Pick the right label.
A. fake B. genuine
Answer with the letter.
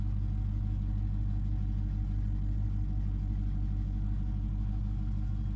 B